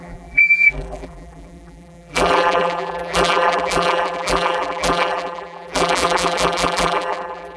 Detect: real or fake fake